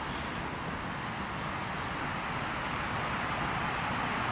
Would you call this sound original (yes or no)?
yes